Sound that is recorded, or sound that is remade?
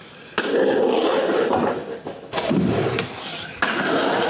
recorded